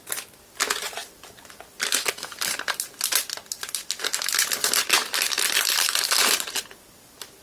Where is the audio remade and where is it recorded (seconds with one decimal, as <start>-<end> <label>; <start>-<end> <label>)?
0.0-1.0 recorded; 1.0-2.6 remade; 2.6-5.0 recorded; 5.0-7.4 remade